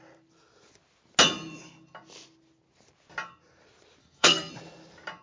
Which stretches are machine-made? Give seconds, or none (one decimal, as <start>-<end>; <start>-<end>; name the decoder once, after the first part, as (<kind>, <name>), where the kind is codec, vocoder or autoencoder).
4.0-4.5 (codec, SNAC)